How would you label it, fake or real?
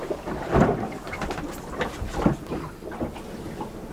real